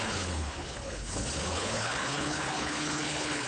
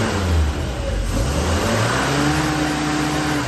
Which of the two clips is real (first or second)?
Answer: second